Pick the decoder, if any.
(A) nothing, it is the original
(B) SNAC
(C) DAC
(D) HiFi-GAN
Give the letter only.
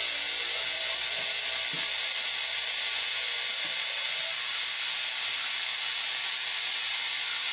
A